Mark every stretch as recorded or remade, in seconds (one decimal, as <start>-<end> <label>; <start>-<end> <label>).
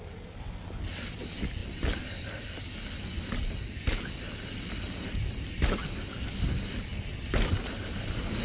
0.0-8.4 recorded